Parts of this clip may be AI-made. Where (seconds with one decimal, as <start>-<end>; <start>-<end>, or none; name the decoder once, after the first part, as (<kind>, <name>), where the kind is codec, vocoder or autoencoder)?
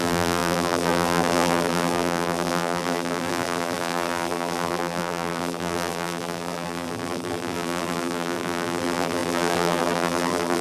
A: 0.0-10.6 (vocoder, BigVGAN v2)